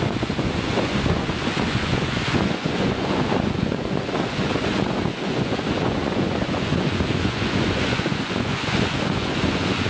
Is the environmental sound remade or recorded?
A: remade